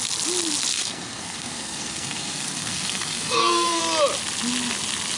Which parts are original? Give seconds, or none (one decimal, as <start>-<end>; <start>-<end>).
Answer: 0.0-0.7; 3.8-5.2